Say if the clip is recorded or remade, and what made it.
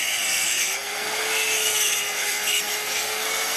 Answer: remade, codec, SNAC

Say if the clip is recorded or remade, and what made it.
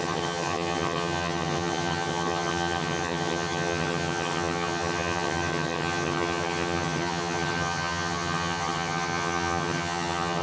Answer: remade, vocoder, HiFi-GAN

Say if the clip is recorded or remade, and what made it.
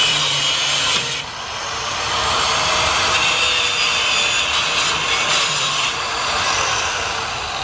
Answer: remade, vocoder, BigVGAN v2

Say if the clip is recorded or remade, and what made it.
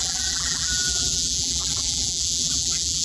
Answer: remade, vocoder, BigVGAN v2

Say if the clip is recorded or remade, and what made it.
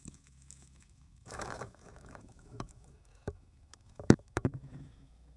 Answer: remade, autoencoder, DAC-VAE